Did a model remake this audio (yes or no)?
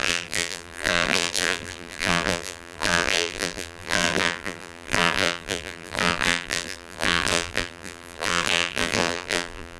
yes